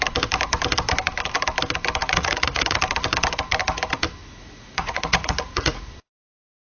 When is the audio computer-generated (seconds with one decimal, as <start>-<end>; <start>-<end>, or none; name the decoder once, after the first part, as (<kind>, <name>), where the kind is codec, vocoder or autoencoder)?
2.0-2.8 (vocoder, Vocos); 4.2-5.9